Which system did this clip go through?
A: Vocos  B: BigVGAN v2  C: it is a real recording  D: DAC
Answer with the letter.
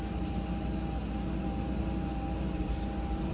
C